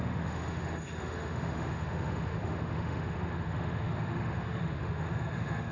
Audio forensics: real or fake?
fake